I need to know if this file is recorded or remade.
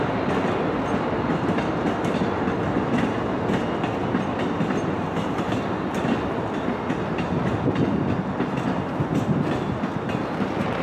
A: recorded